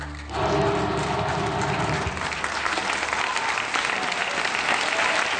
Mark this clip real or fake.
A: real